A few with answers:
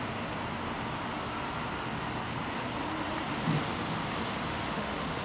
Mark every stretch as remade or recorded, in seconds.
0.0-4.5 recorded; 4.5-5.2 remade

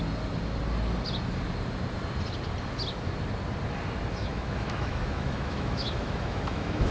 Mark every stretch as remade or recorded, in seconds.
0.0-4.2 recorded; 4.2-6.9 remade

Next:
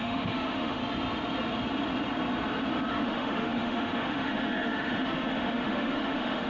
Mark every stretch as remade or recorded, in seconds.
0.0-0.8 remade; 0.8-2.9 recorded; 2.9-6.5 remade